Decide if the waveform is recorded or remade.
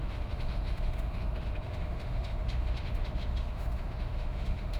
remade